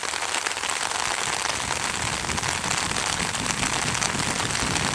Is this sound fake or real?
real